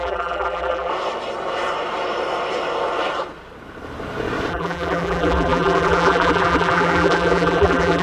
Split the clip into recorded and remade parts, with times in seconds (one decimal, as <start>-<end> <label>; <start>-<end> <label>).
0.0-0.9 remade; 0.9-4.5 recorded; 4.5-8.0 remade